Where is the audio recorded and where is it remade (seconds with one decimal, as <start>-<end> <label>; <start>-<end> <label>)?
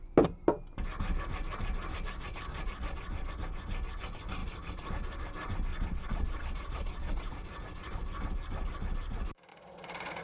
0.0-2.5 recorded; 2.5-3.3 remade; 3.3-5.7 recorded; 5.7-7.3 remade; 7.3-9.5 recorded; 9.5-10.2 remade